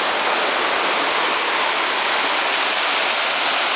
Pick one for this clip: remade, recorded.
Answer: recorded